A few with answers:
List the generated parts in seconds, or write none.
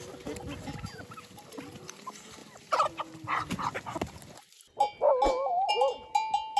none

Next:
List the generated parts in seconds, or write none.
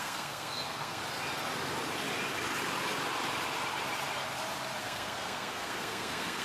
0.0-1.0 (codec, SNAC); 4.8-6.4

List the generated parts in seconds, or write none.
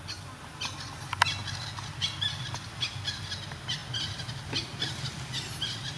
none